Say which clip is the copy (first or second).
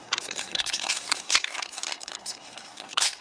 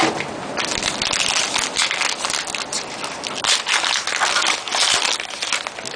first